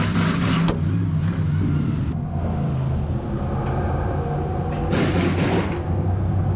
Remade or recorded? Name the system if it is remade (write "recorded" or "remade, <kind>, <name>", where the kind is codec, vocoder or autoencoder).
recorded